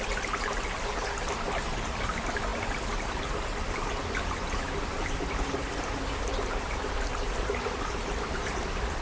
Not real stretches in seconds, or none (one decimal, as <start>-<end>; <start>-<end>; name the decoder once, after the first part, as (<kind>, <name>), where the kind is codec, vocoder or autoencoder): none